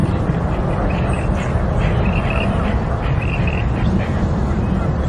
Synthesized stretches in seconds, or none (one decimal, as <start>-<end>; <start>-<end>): 0.0-3.1